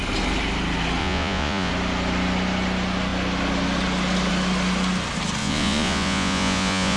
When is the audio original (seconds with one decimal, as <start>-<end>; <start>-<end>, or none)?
0.0-1.0; 1.7-5.4